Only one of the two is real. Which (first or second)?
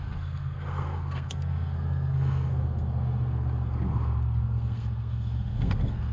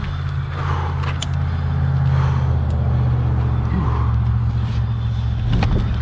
second